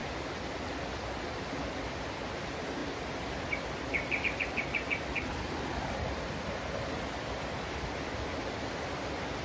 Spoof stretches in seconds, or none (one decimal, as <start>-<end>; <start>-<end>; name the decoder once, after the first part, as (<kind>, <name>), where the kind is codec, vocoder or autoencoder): none